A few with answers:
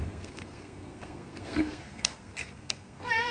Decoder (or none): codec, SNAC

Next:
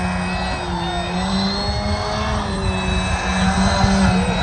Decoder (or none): none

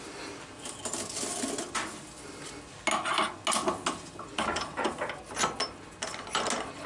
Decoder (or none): none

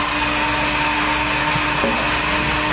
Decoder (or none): none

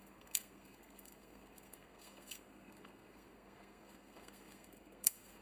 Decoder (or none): codec, SNAC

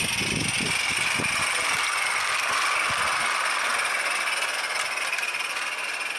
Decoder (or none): none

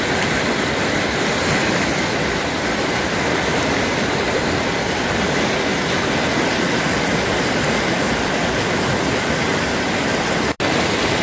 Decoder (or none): none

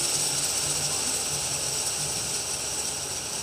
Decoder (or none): none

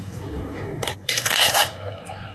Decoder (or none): codec, SNAC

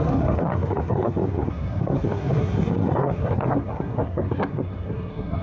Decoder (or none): codec, SNAC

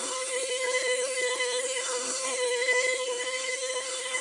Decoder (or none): codec, SNAC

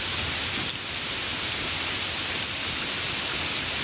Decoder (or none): none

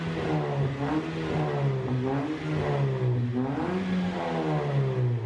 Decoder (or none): none